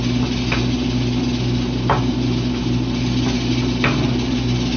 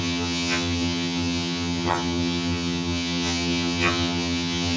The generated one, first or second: second